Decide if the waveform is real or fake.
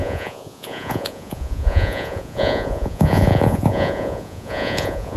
fake